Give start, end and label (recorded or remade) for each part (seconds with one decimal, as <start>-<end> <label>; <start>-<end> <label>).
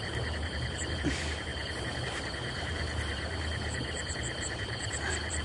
0.0-5.4 remade